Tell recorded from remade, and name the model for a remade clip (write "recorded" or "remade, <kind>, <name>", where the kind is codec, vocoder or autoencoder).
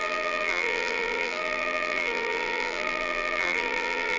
remade, vocoder, BigVGAN v2